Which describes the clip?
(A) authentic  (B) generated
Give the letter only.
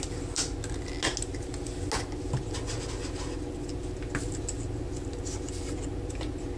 A